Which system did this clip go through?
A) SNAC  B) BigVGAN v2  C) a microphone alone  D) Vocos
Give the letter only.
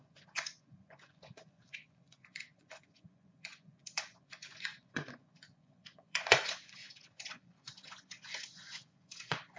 D